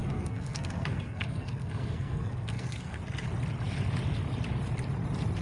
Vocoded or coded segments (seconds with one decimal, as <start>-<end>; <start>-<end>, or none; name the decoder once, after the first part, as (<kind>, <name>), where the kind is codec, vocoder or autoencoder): 0.0-3.0 (codec, SNAC)

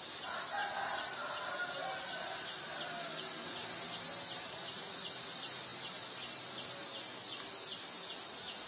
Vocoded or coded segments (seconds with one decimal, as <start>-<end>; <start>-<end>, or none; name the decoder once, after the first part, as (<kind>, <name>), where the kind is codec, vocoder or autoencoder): none

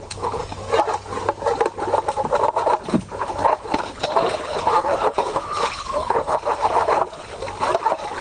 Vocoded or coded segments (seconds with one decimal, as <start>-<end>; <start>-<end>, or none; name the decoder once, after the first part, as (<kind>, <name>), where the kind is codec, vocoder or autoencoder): 0.0-0.4 (codec, HILCodec); 2.9-7.3

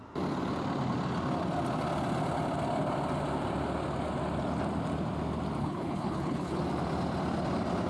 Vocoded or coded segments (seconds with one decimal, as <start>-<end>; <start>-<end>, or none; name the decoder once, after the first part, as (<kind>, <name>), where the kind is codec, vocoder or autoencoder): 5.6-6.6 (codec, HILCodec)

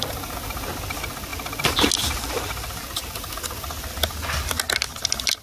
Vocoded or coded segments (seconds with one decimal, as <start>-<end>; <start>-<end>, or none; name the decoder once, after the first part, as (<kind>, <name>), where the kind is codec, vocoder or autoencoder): none